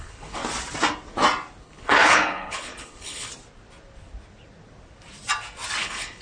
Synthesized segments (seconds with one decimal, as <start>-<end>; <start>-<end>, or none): 0.0-0.4; 1.6-3.3; 5.8-6.2